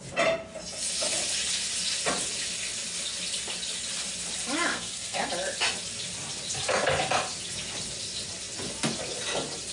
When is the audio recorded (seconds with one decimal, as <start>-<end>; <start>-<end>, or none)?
0.0-4.7; 5.3-9.7